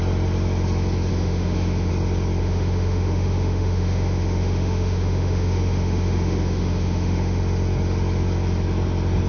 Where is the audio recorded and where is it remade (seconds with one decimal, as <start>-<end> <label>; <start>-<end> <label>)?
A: 0.0-1.1 recorded; 1.1-1.9 remade; 1.9-2.4 recorded; 2.4-7.4 remade; 7.4-9.3 recorded

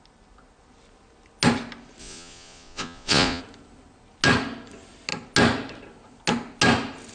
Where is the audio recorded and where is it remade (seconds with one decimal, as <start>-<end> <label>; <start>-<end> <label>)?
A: 0.0-2.0 recorded; 2.0-3.4 remade; 3.4-7.1 recorded

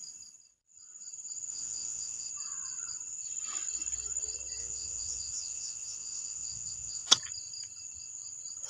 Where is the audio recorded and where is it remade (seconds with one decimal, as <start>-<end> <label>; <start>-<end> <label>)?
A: 0.0-1.5 recorded; 1.5-2.3 remade; 2.3-4.6 recorded; 4.6-7.1 remade; 7.1-8.7 recorded

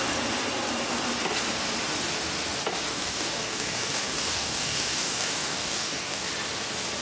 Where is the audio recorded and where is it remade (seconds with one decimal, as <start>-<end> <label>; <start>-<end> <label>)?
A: 0.0-2.9 recorded; 2.9-6.3 remade; 6.3-7.0 recorded